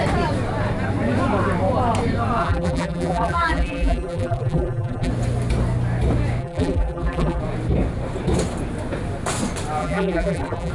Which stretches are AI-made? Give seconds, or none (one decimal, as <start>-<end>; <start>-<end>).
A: 2.4-5.1; 6.4-7.4; 9.8-10.7